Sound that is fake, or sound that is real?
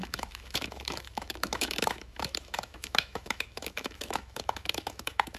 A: fake